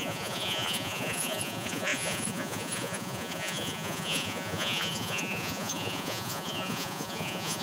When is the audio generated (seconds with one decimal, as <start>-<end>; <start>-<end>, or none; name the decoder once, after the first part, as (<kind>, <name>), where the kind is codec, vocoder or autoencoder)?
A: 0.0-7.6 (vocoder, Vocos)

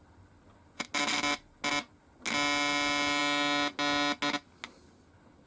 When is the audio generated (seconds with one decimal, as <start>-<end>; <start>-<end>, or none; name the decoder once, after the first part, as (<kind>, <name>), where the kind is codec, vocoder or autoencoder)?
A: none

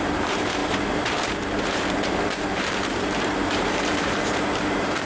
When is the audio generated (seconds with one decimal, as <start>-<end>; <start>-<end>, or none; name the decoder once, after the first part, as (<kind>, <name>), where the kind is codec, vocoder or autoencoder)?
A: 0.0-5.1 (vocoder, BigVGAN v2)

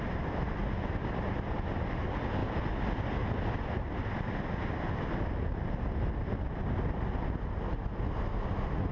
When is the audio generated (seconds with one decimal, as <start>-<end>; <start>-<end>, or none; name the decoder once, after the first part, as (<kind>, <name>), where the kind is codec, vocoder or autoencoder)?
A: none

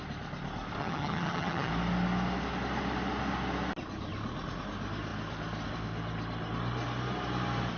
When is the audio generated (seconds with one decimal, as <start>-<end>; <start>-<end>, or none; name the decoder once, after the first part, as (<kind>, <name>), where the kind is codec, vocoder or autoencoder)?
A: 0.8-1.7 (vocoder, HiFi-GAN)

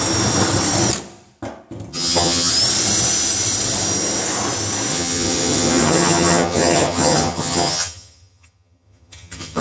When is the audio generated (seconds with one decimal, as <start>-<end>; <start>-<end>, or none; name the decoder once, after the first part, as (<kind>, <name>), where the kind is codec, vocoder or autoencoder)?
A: 1.9-2.5 (vocoder, HiFi-GAN); 4.9-9.6

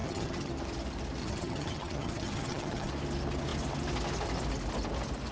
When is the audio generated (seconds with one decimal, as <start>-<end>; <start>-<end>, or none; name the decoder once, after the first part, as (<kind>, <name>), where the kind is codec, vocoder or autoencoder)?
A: 0.0-0.5 (vocoder, HiFi-GAN); 1.2-2.9

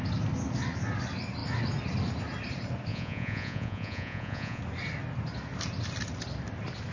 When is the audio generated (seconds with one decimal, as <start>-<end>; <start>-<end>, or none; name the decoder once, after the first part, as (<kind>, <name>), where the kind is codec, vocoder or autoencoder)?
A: 2.9-4.6 (vocoder, Vocos)